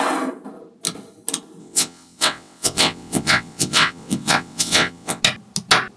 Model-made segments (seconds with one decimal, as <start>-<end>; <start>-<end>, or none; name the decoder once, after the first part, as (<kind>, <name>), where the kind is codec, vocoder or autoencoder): 1.6-5.2 (vocoder, WaveNeXt)